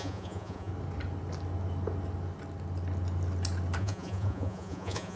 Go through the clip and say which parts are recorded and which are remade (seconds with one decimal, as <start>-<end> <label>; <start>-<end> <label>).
0.0-0.7 remade; 0.7-3.8 recorded; 3.8-5.2 remade